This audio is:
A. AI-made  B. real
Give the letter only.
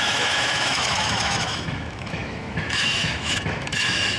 A